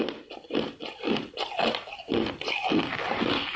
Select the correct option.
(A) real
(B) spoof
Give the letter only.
B